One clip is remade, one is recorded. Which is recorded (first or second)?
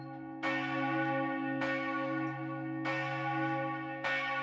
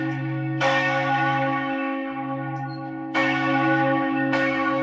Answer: first